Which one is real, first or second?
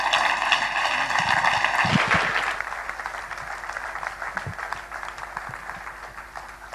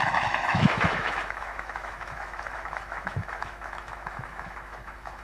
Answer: first